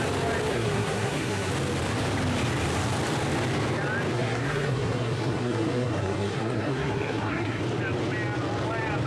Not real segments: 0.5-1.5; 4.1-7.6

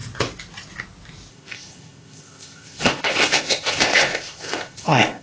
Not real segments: 1.3-5.2